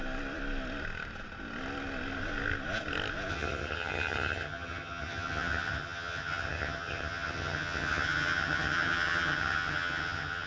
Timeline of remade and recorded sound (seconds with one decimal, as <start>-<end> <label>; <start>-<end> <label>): 0.0-3.3 recorded; 3.3-10.5 remade